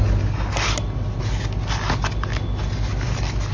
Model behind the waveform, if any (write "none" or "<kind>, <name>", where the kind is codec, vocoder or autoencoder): none